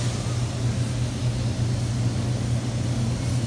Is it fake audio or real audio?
real